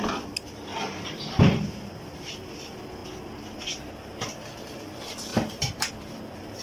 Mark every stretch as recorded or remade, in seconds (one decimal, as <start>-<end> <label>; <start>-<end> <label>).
0.0-0.7 recorded; 0.7-2.3 remade; 2.3-5.3 recorded; 5.3-5.9 remade; 5.9-6.6 recorded